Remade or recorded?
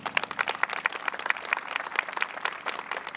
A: recorded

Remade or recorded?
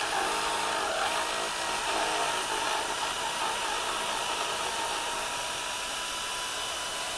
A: recorded